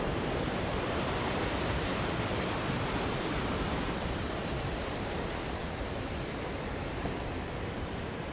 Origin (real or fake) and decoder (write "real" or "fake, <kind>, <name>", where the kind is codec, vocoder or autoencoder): fake, vocoder, BigVGAN v2